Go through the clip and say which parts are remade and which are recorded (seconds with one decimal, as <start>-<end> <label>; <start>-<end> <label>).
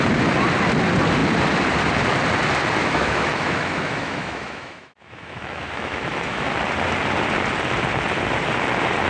0.0-2.8 recorded; 2.8-6.5 remade; 6.5-9.1 recorded